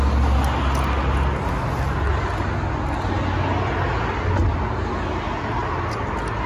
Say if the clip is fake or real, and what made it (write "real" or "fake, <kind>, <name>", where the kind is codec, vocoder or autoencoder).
real